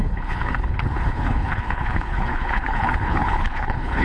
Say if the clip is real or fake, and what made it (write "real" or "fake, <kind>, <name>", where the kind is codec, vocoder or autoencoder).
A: fake, codec, HILCodec